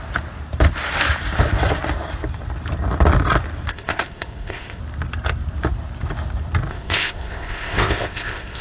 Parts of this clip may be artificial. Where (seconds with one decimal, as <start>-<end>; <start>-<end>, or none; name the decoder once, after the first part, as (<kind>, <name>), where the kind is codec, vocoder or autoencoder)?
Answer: 3.7-4.8 (codec, ZipCodec); 6.7-8.6